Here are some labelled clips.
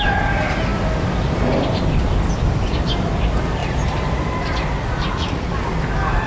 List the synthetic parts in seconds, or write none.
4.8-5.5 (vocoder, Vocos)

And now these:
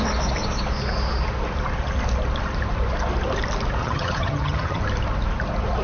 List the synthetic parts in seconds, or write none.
3.8-4.8 (vocoder, HiFi-GAN)

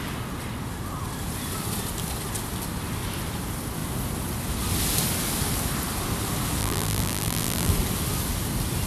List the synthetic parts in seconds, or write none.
6.6-7.7 (vocoder, BigVGAN v2)

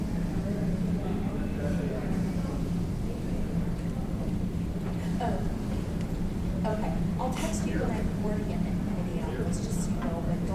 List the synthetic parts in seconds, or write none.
0.0-10.5 (vocoder, BigVGAN v2)